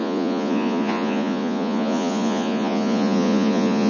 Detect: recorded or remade remade